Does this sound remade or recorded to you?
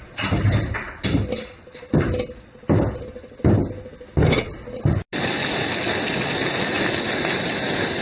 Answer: recorded